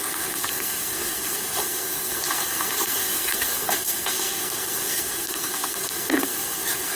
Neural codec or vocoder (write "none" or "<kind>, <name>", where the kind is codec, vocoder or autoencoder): codec, SNAC